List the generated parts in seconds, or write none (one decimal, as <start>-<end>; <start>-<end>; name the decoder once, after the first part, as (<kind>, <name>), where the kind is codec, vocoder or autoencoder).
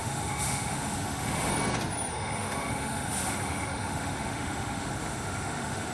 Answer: 0.0-1.5 (autoencoder, DAC-VAE); 2.1-5.9